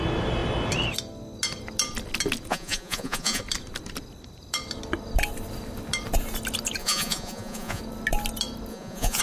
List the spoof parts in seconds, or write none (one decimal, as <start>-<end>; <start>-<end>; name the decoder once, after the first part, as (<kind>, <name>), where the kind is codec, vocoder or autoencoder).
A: 2.5-3.4 (vocoder, Vocos); 6.8-7.8; 8.7-9.2

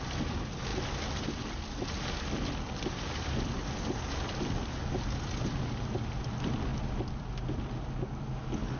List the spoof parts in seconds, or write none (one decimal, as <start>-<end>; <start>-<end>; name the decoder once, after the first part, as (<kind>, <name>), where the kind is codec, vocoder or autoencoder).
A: none